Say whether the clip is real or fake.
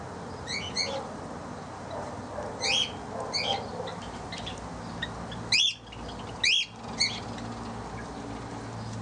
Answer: real